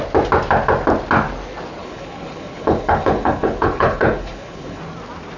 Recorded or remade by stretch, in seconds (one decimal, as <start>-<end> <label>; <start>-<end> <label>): 0.0-1.8 recorded; 1.8-4.8 remade; 4.8-5.4 recorded